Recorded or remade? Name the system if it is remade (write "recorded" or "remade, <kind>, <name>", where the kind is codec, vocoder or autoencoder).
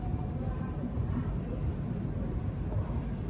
recorded